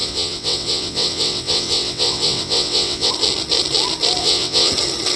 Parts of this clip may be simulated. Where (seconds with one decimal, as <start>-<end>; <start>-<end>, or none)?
0.0-3.1; 4.2-4.7